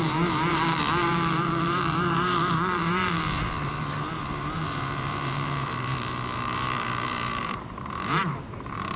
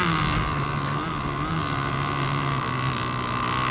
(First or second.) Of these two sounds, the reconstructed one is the first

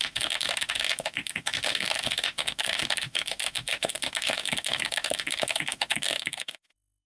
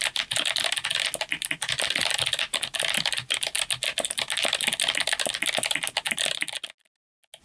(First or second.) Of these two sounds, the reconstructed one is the first